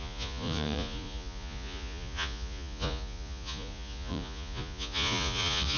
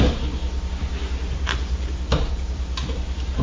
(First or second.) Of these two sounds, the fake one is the first